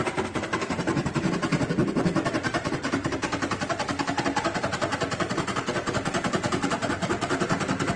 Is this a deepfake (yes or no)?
yes